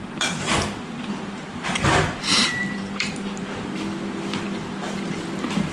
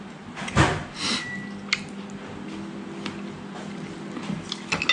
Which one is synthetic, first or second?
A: first